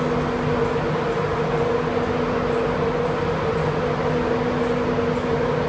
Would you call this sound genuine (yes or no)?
yes